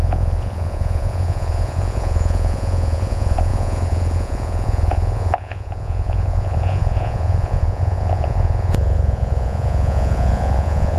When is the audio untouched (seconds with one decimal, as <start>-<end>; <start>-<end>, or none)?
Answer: none